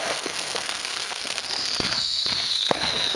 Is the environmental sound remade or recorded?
remade